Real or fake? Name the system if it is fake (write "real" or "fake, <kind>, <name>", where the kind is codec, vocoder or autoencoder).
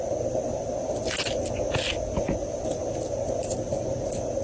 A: real